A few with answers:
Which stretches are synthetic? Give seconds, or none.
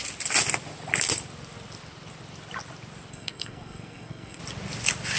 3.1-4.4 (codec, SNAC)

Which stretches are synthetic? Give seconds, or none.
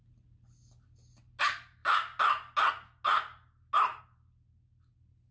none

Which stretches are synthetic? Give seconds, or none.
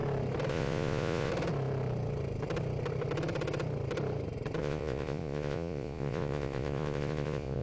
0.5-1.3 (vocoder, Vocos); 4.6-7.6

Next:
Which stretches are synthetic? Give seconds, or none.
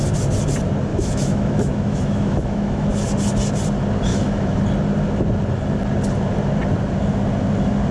0.9-2.9 (autoencoder, DAC-VAE); 4.1-4.6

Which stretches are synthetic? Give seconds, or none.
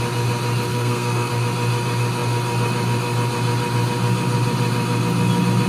0.7-1.3 (codec, SNAC)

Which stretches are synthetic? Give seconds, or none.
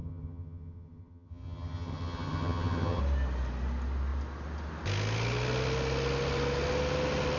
0.0-3.0 (vocoder, HiFi-GAN)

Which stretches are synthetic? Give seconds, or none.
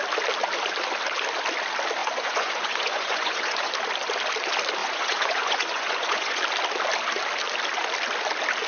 2.0-3.7 (vocoder, Vocos); 4.8-6.4